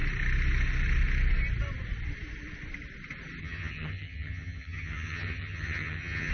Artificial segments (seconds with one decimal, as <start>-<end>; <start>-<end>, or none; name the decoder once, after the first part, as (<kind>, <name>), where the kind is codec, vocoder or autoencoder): 3.4-6.3 (vocoder, HiFi-GAN)